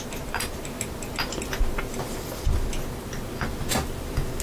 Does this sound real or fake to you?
real